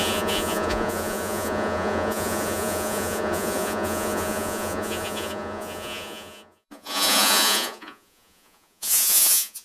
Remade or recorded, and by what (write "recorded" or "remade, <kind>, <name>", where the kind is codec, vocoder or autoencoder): remade, vocoder, Vocos